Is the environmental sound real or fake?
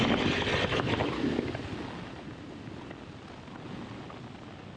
real